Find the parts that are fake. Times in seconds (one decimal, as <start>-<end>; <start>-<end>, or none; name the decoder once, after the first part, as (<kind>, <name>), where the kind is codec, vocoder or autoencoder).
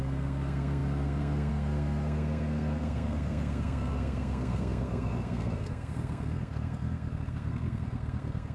0.0-8.5 (codec, SNAC)